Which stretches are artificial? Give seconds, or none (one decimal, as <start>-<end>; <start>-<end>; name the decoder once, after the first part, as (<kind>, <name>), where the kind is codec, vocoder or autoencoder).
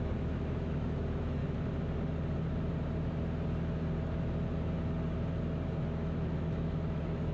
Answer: 0.0-1.4 (autoencoder, DAC-VAE); 5.8-7.3